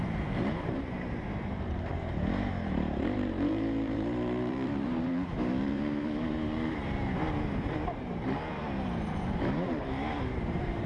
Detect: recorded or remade remade